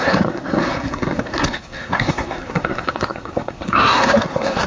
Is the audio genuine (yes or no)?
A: no